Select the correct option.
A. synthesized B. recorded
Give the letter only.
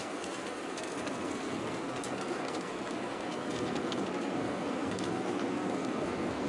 A